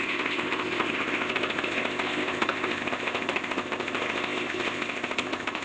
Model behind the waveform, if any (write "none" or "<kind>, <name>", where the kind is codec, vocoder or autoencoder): codec, ZipCodec